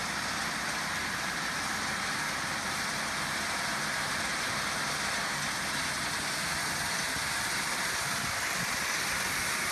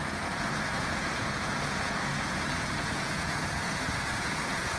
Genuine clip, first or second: first